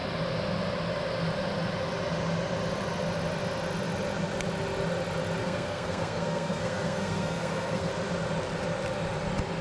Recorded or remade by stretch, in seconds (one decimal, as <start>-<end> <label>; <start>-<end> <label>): 0.0-5.4 recorded; 5.4-7.9 remade; 7.9-9.6 recorded